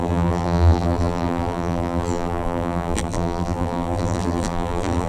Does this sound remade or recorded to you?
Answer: remade